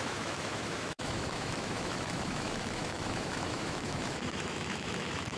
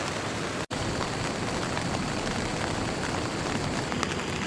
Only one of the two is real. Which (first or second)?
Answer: second